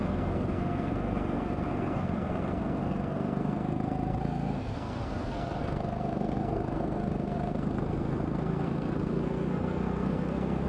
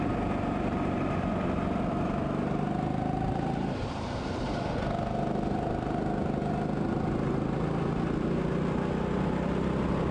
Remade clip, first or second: first